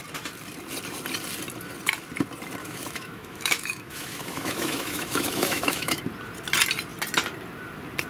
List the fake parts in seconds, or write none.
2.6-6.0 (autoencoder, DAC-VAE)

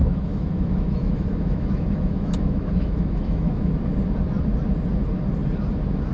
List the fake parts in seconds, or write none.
0.0-3.7 (autoencoder, DAC-VAE)

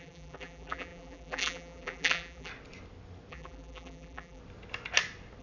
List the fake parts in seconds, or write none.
0.0-2.5 (vocoder, BigVGAN v2); 3.3-4.4

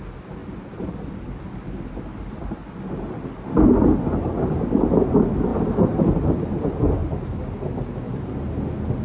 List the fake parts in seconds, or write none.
0.4-2.7 (vocoder, BigVGAN v2); 7.0-7.9